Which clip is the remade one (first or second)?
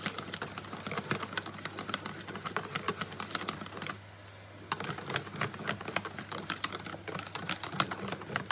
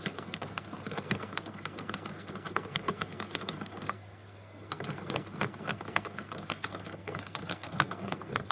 second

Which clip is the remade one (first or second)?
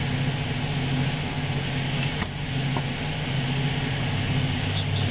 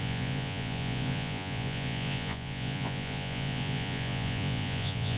second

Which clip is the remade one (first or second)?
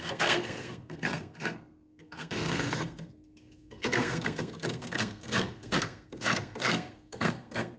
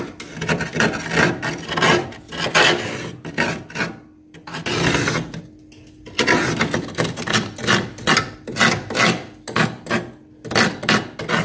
first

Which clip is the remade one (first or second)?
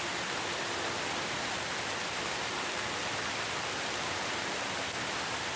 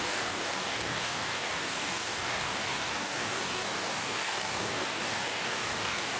second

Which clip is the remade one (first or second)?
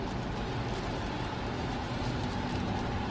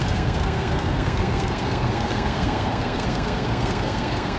second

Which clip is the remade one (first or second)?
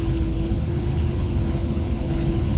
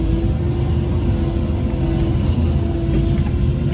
first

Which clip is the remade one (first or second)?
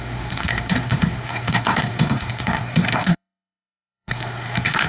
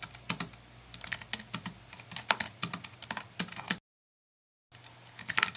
first